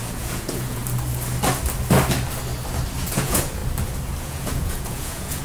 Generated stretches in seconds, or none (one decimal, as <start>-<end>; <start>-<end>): 0.0-0.8; 3.0-3.6; 4.2-5.4